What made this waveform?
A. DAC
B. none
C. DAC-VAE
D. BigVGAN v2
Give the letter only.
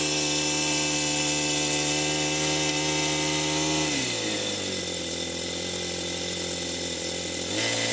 B